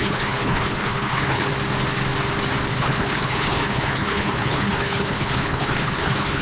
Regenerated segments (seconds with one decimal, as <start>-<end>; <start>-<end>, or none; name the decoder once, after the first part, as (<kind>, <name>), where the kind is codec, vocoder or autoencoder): 0.0-1.5 (codec, HILCodec); 2.7-6.4

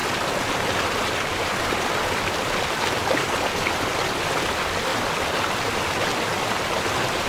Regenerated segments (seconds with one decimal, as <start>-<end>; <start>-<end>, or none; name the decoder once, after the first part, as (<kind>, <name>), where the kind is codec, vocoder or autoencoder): 0.0-4.9 (vocoder, BigVGAN v2)

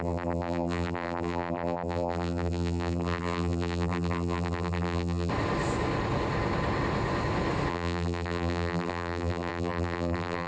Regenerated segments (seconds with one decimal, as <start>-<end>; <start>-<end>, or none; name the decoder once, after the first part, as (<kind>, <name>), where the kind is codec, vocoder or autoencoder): 0.0-5.3 (vocoder, BigVGAN v2); 7.7-10.5

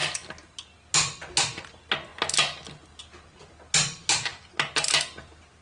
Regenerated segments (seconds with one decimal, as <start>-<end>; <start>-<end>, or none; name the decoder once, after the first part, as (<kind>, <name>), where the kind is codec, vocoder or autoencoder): none

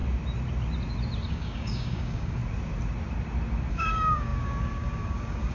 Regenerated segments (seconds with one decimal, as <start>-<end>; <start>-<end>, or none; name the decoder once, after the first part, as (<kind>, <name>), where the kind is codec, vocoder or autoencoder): 1.3-2.4 (codec, DAC); 3.7-5.5

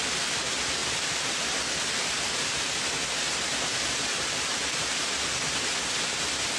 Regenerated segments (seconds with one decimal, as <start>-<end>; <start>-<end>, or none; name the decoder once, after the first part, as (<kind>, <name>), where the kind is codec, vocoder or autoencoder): none